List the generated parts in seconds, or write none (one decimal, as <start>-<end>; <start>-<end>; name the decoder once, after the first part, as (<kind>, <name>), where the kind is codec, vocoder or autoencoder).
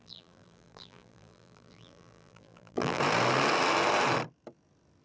0.0-3.0 (vocoder, BigVGAN v2)